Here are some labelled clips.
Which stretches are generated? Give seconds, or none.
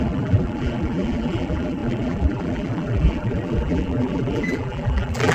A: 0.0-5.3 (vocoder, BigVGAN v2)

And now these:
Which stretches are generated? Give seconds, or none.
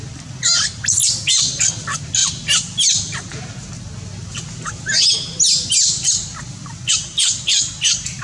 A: none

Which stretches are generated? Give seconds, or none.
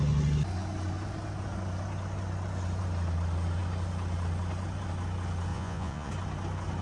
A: 5.5-6.1 (vocoder, Vocos)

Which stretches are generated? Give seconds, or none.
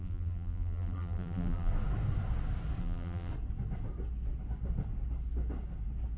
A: 0.0-1.7 (vocoder, BigVGAN v2); 2.8-3.3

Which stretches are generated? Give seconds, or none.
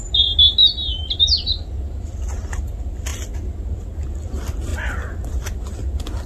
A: none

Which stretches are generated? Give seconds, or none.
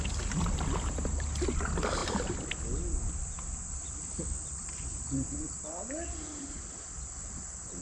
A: none